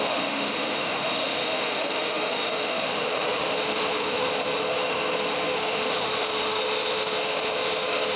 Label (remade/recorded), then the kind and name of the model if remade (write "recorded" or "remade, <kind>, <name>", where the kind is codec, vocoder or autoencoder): remade, autoencoder, DAC-VAE